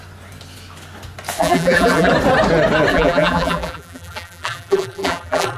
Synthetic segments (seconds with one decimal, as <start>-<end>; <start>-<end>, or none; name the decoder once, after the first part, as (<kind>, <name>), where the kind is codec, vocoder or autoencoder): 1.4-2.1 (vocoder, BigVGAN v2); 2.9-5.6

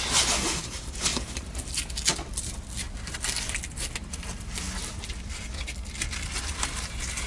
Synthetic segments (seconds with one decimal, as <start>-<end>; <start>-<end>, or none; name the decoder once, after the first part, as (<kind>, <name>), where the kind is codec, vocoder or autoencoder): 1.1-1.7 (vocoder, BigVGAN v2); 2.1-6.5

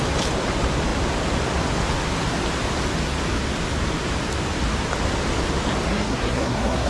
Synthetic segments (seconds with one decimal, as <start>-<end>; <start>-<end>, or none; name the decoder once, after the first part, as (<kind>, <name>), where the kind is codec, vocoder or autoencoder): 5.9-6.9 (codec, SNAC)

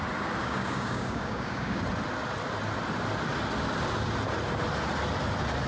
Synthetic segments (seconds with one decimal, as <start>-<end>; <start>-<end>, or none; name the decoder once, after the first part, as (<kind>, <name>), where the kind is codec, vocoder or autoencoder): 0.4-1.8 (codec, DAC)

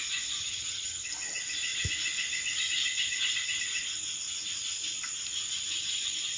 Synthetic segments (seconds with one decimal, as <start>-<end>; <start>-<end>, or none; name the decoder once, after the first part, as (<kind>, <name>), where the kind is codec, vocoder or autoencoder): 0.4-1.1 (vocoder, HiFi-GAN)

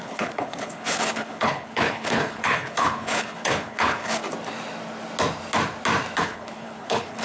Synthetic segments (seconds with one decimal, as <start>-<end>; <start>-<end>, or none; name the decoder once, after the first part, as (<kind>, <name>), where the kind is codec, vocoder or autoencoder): 0.0-4.2 (codec, HILCodec); 6.2-7.2

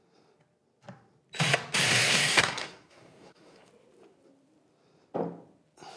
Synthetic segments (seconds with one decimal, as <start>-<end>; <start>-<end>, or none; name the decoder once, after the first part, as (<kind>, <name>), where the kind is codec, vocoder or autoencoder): 1.8-3.7 (codec, SNAC)

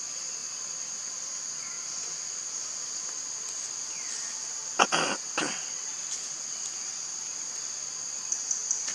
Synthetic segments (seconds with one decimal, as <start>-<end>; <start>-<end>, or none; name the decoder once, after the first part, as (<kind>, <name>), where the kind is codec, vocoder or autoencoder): none